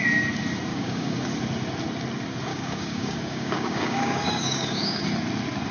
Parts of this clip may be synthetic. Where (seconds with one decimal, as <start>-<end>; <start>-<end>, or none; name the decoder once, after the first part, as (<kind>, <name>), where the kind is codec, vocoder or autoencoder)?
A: 0.7-1.3 (codec, DAC); 2.5-5.0